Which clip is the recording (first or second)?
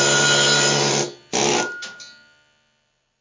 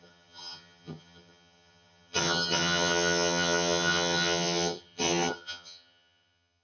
first